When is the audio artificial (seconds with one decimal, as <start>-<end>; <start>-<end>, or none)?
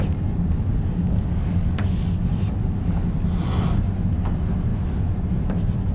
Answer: 0.7-2.3